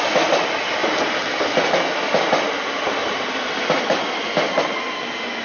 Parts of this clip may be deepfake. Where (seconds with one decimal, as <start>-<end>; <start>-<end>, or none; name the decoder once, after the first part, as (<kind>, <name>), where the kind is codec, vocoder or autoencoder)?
none